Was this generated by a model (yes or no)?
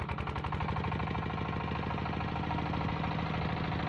no